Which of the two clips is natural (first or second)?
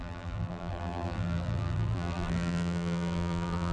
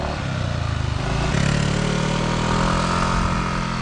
second